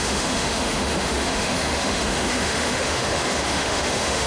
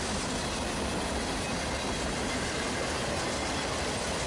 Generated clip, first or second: first